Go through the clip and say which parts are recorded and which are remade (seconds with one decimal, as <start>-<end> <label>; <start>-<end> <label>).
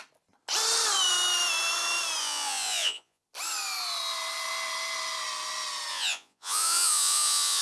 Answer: 0.0-2.2 recorded; 2.2-3.2 remade; 3.2-5.9 recorded; 5.9-7.6 remade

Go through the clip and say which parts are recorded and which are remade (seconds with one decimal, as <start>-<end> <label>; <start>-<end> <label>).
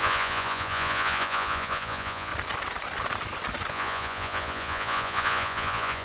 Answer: 0.0-2.3 remade; 2.3-3.7 recorded; 3.7-6.0 remade